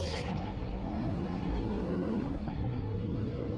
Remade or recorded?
remade